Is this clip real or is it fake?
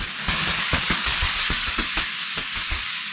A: fake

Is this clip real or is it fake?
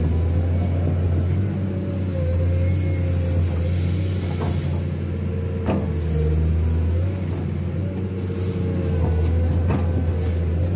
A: real